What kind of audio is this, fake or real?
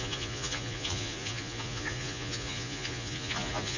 fake